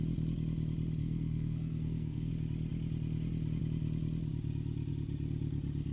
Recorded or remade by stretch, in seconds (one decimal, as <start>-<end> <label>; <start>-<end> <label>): 0.0-1.0 recorded; 1.0-2.3 remade; 2.3-5.9 recorded